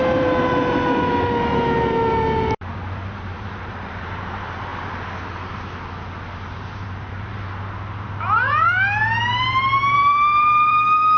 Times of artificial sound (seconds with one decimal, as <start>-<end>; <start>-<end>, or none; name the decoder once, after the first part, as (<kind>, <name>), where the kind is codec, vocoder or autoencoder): 0.0-4.7 (vocoder, BigVGAN v2); 6.4-11.2